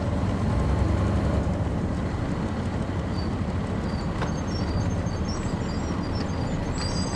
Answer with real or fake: real